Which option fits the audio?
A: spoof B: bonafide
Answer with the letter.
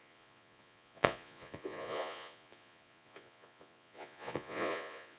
A